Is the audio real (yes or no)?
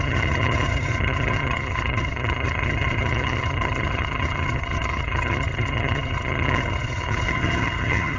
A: no